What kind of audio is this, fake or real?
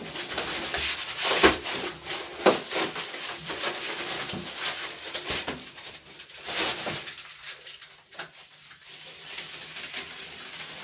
fake